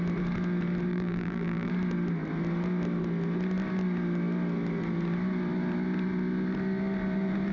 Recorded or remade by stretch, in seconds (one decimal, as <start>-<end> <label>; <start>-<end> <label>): 0.0-0.9 recorded; 0.9-1.7 remade; 1.7-7.5 recorded